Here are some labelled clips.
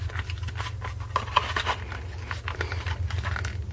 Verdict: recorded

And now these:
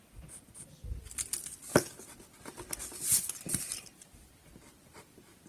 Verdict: recorded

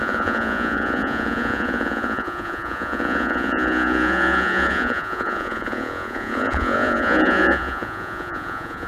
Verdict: remade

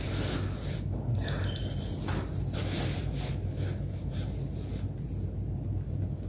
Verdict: recorded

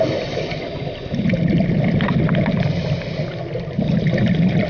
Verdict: recorded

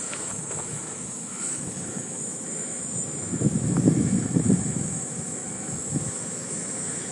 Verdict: remade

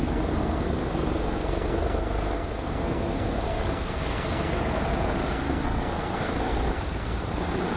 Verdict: remade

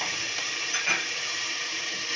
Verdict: remade